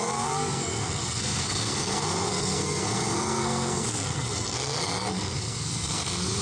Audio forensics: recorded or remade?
remade